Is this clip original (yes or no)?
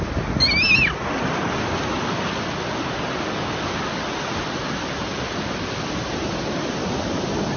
yes